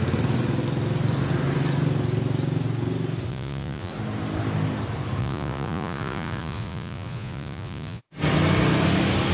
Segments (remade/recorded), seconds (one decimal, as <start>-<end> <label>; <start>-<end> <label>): 0.0-3.3 recorded; 3.3-3.9 remade; 3.9-5.2 recorded; 5.2-8.0 remade; 8.0-9.3 recorded